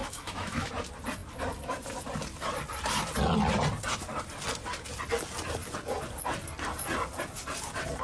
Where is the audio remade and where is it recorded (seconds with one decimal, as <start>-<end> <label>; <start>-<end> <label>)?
0.0-0.7 remade; 0.7-8.0 recorded